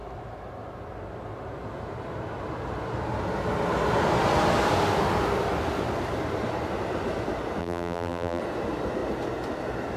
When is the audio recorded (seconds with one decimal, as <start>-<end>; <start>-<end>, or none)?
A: 0.0-7.6; 8.4-10.0